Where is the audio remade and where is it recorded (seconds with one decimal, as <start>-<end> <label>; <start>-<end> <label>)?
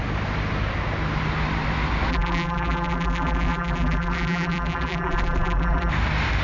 0.0-2.1 recorded; 2.1-5.9 remade; 5.9-6.4 recorded